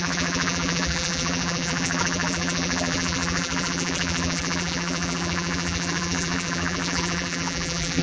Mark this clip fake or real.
fake